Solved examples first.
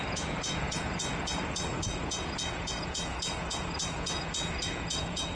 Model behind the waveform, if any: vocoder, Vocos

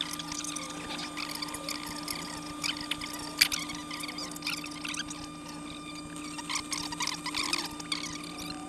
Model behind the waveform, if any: none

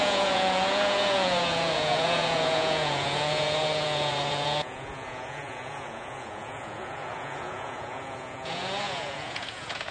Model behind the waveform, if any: vocoder, Vocos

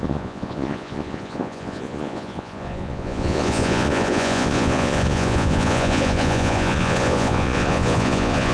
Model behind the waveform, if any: vocoder, Vocos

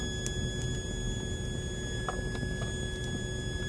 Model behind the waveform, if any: none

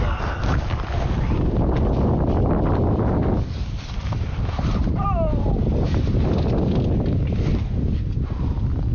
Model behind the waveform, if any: none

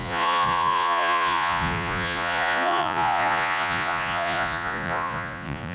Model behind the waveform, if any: vocoder, Vocos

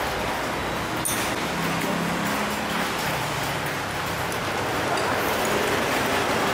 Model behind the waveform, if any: none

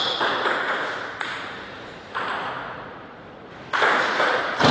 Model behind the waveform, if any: vocoder, Vocos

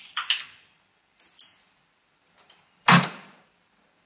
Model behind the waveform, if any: none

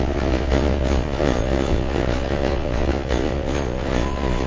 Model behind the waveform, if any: vocoder, Vocos